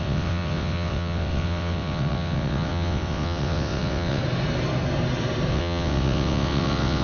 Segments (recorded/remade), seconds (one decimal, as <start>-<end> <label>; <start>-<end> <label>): 0.0-4.2 remade; 4.2-5.5 recorded; 5.5-7.0 remade